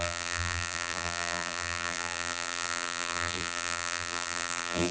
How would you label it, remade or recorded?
remade